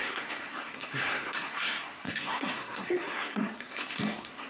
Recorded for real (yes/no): no